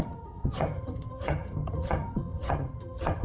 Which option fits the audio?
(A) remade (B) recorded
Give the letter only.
A